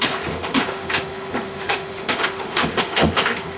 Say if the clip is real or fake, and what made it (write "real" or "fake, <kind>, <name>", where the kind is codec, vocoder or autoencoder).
fake, autoencoder, DAC-VAE